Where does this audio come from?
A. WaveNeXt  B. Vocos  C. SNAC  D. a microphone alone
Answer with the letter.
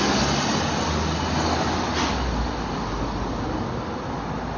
D